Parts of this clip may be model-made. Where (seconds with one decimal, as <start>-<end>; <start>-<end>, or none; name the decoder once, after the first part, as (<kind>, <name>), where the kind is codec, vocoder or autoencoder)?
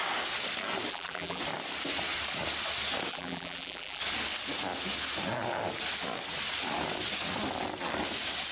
0.9-1.4 (vocoder, BigVGAN v2); 3.1-4.0